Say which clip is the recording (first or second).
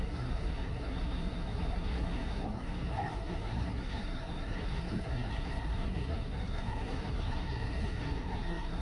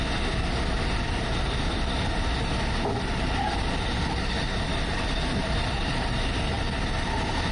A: second